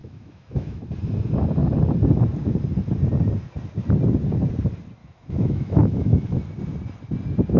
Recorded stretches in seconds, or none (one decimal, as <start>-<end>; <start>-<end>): 0.8-5.0; 6.4-7.6